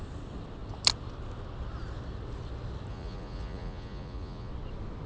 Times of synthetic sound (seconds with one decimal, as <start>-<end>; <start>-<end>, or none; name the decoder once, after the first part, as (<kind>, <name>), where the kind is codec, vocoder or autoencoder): 2.9-4.5 (vocoder, Vocos)